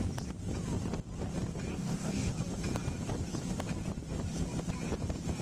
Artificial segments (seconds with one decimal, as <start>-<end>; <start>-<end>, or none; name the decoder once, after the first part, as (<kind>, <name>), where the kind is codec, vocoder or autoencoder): 1.7-2.3 (codec, DAC)